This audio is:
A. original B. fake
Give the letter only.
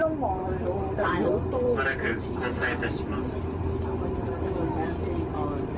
A